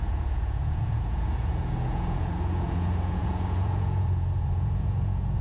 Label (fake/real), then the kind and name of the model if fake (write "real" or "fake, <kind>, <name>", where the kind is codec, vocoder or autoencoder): fake, vocoder, Vocos